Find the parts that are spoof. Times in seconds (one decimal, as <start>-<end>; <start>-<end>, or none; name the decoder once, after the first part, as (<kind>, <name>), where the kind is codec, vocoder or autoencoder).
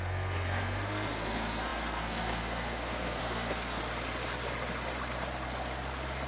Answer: 0.0-3.8 (codec, SNAC)